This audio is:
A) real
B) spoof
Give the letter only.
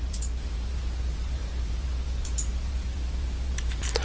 B